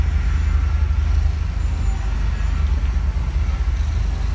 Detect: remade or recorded recorded